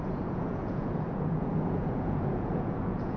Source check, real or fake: fake